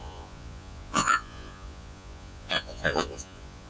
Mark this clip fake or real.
fake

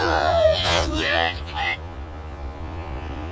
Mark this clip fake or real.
fake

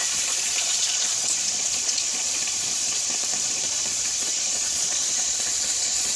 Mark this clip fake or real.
fake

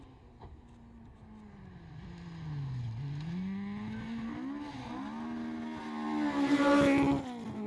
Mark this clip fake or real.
real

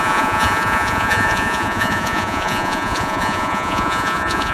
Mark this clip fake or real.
fake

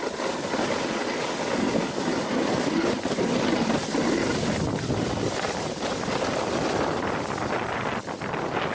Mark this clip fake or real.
real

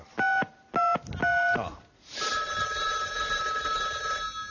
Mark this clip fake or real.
real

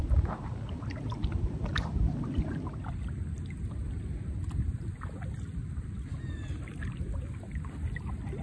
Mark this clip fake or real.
real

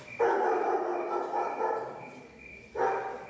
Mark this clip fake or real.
real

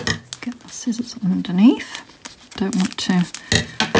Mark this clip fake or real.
real